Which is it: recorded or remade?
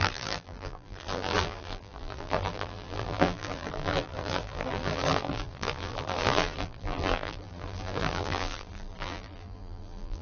remade